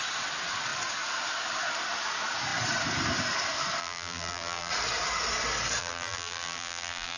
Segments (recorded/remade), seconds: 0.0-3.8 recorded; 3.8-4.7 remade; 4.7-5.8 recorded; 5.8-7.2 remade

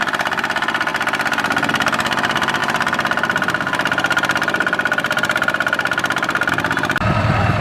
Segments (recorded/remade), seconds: 0.0-7.6 recorded

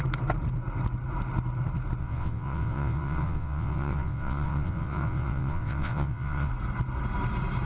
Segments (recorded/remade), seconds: 0.0-2.0 recorded; 2.0-6.5 remade; 6.5-7.7 recorded

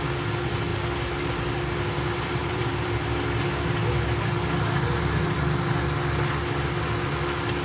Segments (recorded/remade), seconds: 0.0-2.4 recorded; 2.4-2.9 remade; 2.9-7.6 recorded

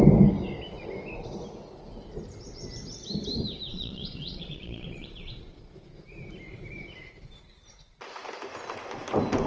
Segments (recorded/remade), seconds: 0.0-3.7 recorded; 3.7-5.6 remade; 5.6-9.5 recorded